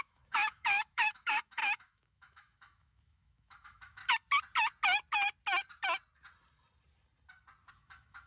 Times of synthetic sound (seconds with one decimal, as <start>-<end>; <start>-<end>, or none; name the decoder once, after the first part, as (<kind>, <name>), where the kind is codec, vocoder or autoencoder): 0.0-4.0 (autoencoder, DAC-VAE); 7.7-8.3